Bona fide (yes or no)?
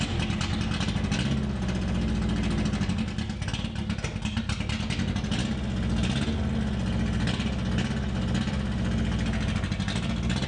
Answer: yes